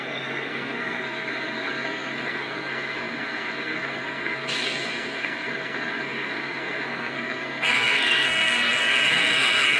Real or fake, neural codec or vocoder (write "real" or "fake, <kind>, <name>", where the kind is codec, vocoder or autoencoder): fake, codec, SNAC